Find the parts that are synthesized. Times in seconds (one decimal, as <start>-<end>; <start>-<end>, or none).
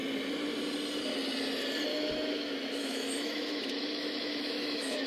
1.9-5.1